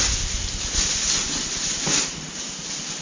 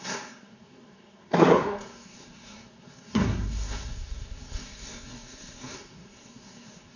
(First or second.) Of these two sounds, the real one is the first